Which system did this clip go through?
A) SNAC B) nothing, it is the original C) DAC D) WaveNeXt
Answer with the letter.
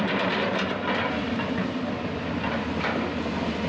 B